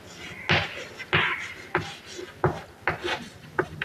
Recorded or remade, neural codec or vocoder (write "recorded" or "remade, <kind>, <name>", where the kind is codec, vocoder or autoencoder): recorded